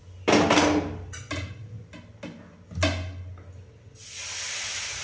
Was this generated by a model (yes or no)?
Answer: no